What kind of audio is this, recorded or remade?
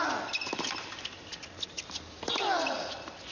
recorded